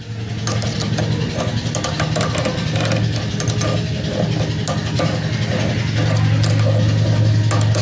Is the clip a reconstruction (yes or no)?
no